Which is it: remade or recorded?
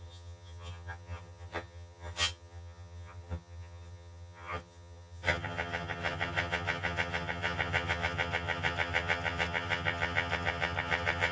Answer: remade